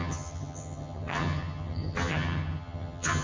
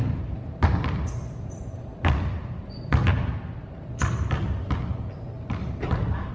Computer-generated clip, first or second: first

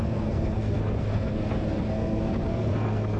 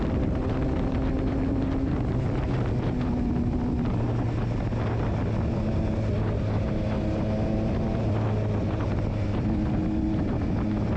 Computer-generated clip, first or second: first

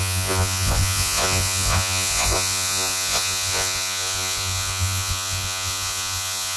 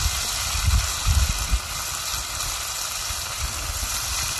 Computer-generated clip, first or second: first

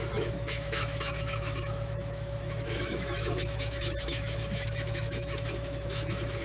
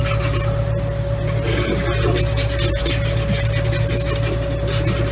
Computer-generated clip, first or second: first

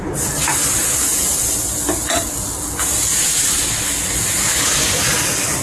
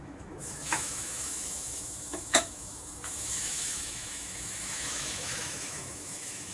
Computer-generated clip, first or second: second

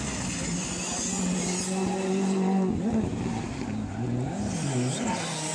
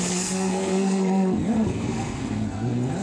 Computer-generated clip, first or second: second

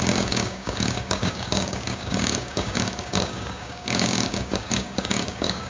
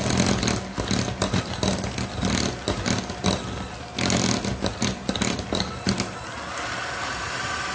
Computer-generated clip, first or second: first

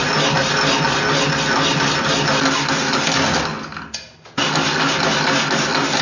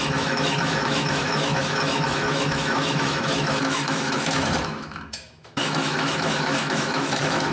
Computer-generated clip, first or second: second